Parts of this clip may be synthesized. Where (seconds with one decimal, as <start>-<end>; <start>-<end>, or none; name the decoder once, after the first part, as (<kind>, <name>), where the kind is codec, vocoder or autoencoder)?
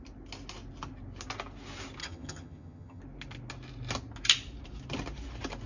2.0-3.0 (vocoder, HiFi-GAN)